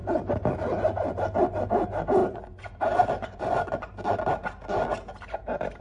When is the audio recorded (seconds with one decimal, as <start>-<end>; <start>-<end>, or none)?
0.0-2.2; 2.7-3.2; 3.9-5.8

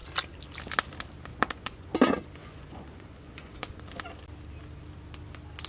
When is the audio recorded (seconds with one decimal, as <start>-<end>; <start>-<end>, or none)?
0.0-1.3; 1.9-2.4; 3.8-5.7

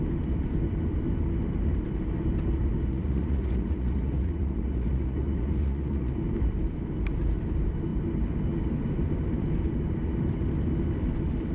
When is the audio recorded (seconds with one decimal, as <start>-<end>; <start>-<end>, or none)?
0.0-2.9; 6.1-11.5

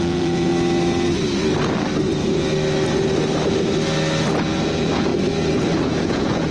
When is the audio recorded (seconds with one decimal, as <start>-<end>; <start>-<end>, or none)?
0.5-4.4; 5.1-5.8

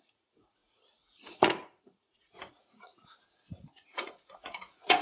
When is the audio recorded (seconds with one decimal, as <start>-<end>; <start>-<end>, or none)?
2.9-3.7

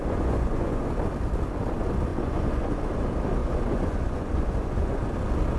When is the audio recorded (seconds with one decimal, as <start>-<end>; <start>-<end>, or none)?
0.9-2.1; 2.8-3.4; 5.0-5.6

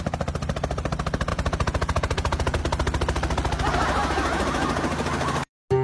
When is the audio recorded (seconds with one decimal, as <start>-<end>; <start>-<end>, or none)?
0.0-1.3; 2.6-5.8